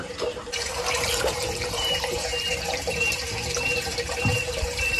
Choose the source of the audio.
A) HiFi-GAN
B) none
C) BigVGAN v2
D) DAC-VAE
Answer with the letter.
C